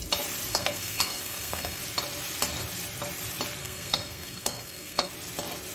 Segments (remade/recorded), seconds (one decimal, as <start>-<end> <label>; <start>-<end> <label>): 0.0-0.5 recorded; 0.5-1.8 remade; 1.8-3.6 recorded; 3.6-5.1 remade; 5.1-5.7 recorded